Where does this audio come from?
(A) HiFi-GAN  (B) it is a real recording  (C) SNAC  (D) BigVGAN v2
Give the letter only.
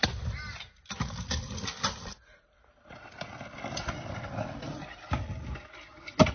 B